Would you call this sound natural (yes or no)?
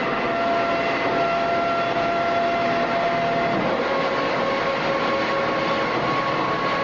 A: yes